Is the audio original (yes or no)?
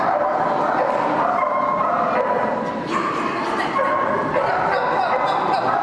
yes